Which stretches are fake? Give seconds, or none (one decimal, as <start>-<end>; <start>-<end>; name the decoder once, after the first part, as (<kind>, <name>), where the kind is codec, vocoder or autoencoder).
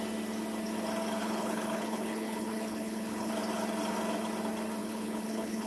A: 1.2-3.3 (codec, HILCodec); 4.8-5.7